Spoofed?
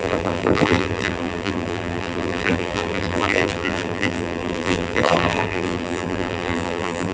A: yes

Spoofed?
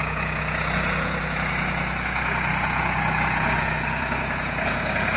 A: yes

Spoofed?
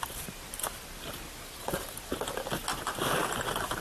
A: no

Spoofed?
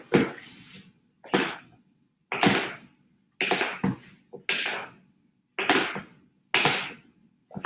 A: no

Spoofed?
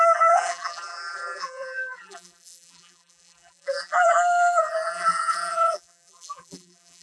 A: yes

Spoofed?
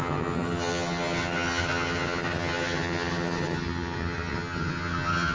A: yes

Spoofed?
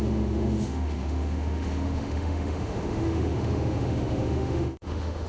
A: yes